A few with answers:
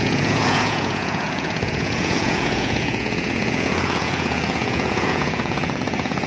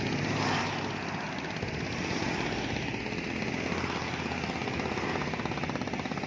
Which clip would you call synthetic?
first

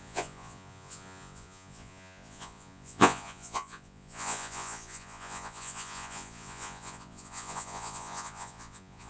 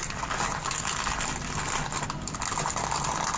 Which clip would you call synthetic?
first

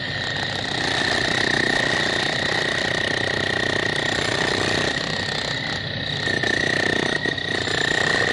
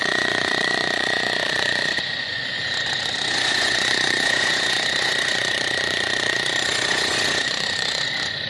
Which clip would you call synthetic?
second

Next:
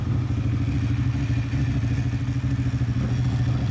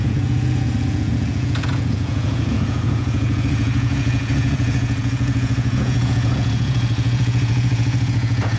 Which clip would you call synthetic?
second